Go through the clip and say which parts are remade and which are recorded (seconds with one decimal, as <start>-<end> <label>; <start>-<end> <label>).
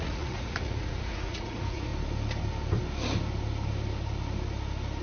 0.0-1.9 remade; 1.9-5.0 recorded